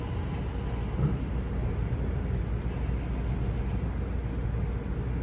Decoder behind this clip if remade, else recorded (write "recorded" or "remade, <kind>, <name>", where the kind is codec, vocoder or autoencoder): recorded